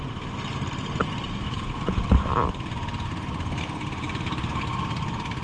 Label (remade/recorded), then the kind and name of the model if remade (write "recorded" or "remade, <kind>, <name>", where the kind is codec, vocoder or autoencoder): recorded